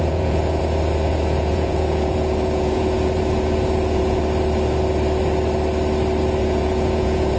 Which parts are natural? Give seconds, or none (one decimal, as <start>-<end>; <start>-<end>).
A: 0.6-1.1; 4.2-6.4

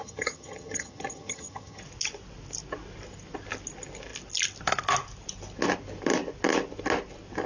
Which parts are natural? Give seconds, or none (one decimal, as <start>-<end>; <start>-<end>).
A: 1.8-7.5

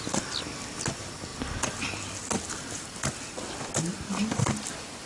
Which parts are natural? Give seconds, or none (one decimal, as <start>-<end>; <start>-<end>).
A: 0.0-5.1